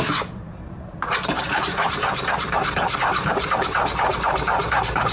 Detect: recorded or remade remade